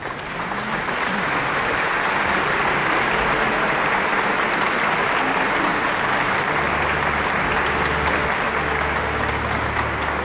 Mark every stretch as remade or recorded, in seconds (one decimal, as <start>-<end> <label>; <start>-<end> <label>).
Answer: 0.0-10.2 recorded